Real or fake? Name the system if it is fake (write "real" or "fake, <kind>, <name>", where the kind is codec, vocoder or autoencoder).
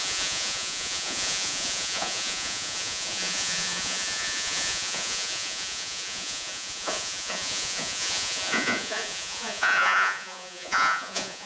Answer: fake, vocoder, Vocos